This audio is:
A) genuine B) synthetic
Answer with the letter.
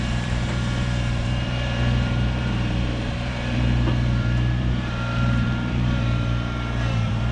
B